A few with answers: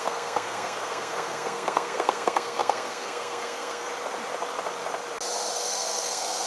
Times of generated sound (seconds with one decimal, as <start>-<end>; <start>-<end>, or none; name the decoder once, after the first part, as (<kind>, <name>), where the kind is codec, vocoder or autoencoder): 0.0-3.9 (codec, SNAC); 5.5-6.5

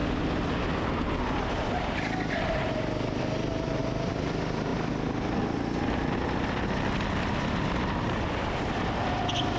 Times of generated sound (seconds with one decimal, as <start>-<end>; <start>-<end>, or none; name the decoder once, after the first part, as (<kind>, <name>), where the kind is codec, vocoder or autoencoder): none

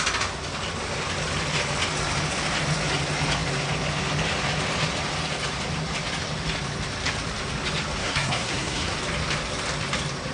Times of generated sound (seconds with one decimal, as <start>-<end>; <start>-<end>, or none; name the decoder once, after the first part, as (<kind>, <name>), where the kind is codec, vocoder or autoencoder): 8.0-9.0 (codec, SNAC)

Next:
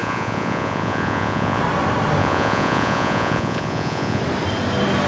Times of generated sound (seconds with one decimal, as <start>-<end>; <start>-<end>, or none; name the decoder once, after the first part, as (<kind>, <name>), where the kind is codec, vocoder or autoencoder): 0.0-1.6 (vocoder, Vocos); 2.2-4.2